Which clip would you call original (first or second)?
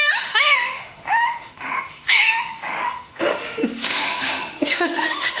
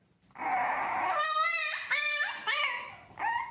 second